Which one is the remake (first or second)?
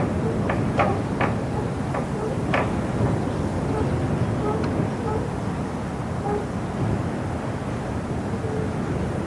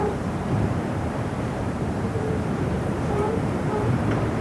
second